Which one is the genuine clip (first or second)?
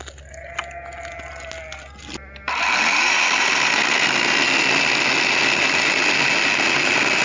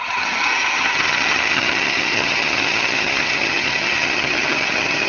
first